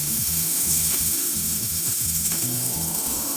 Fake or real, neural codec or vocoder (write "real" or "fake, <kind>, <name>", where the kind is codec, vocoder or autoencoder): fake, autoencoder, DAC-VAE